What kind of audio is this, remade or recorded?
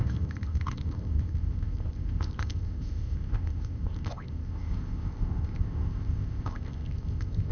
remade